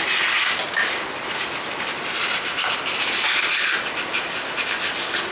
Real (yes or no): yes